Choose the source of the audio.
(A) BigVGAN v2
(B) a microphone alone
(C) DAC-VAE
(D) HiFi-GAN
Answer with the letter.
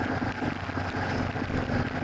B